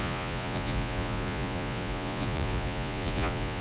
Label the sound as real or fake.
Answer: fake